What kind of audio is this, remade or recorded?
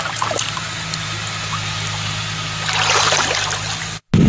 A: recorded